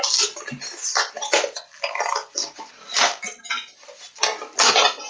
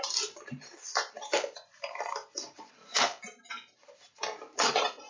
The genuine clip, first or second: first